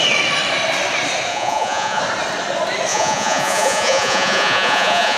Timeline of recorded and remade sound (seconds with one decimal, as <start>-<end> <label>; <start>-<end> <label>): 0.0-1.3 recorded; 1.3-2.0 remade; 2.0-2.9 recorded; 2.9-5.2 remade